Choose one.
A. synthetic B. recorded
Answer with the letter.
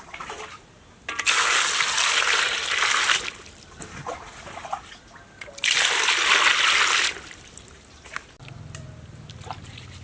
B